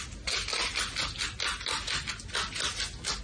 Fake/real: real